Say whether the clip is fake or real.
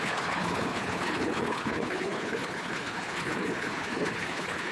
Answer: fake